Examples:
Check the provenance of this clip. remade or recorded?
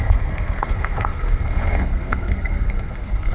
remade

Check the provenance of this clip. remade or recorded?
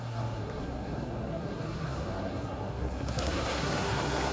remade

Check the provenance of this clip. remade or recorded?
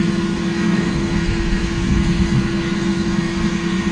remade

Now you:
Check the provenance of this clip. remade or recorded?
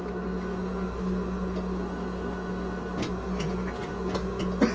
recorded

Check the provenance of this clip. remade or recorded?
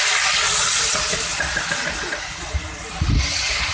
recorded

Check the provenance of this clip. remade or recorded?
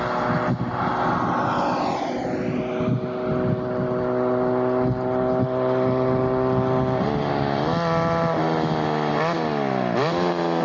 recorded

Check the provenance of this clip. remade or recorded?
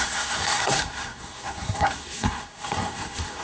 remade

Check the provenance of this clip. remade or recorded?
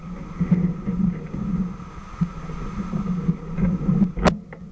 recorded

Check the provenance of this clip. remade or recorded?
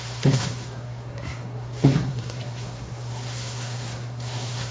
remade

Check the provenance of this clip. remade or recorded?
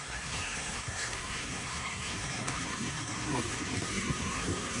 remade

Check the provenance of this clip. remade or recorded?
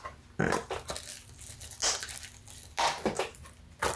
recorded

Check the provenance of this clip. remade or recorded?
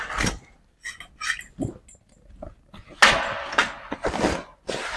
recorded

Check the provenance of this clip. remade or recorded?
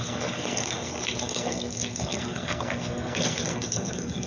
remade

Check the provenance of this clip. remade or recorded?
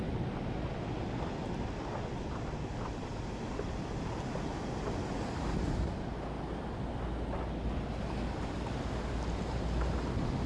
recorded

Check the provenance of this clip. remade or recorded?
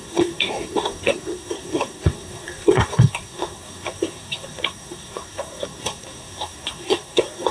remade